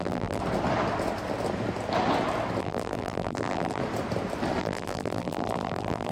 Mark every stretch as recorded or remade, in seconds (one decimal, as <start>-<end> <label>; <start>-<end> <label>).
0.0-0.4 remade; 0.4-2.6 recorded; 2.6-3.8 remade; 3.8-4.6 recorded; 4.6-6.1 remade